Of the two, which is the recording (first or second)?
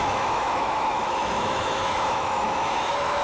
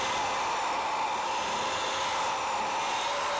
second